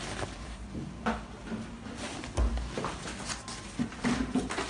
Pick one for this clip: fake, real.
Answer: real